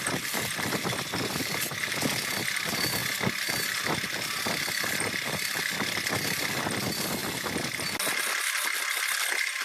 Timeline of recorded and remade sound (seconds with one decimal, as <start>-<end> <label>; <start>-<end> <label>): 0.0-9.6 recorded